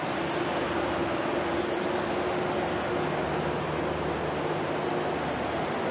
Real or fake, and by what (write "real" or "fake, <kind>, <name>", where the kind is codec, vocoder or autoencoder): real